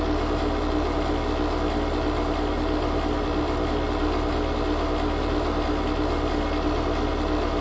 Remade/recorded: recorded